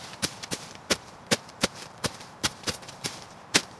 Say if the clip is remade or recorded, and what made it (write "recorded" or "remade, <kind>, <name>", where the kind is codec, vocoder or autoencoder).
remade, vocoder, BigVGAN v2